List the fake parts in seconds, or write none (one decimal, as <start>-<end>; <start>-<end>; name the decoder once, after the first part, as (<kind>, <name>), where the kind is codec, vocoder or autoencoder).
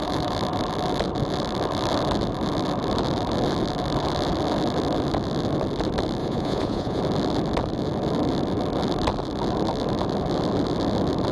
6.2-7.0 (vocoder, Vocos)